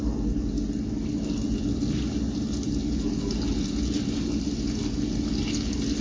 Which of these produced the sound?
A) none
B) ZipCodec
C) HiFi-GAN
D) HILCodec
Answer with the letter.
A